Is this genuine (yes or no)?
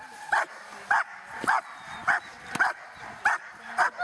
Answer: yes